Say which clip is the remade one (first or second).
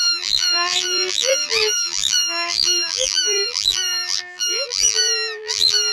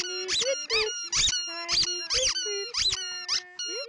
first